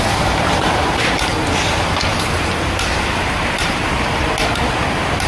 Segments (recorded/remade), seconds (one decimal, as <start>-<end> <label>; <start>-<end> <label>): 0.0-0.6 recorded; 0.6-1.3 remade; 1.3-2.1 recorded; 2.1-4.3 remade; 4.3-5.3 recorded